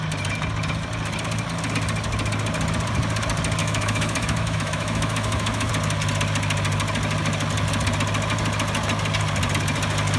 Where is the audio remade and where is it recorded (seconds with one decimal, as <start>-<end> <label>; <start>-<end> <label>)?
0.0-3.6 recorded; 3.6-5.7 remade; 5.7-10.2 recorded